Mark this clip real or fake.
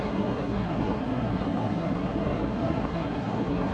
fake